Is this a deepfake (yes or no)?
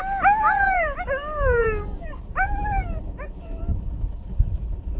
yes